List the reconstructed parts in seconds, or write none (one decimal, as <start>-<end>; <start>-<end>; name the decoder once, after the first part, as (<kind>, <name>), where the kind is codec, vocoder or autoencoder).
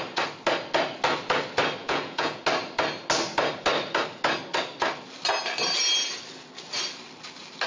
1.8-2.4 (vocoder, Vocos)